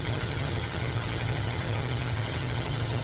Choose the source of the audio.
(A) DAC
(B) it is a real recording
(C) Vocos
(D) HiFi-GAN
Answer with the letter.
D